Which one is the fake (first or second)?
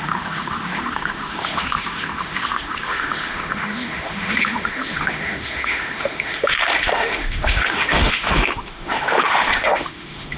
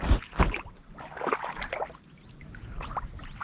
first